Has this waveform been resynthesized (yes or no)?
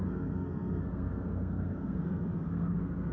yes